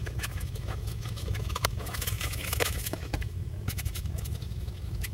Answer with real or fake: fake